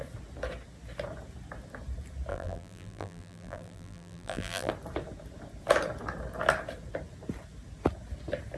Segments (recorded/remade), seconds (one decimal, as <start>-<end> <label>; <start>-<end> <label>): 0.0-2.3 recorded; 2.3-4.7 remade; 4.7-8.6 recorded